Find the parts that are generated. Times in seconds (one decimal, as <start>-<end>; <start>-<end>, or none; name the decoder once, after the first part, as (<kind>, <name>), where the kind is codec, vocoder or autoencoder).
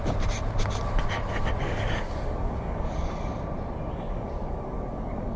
1.6-3.3 (codec, DAC); 3.9-5.4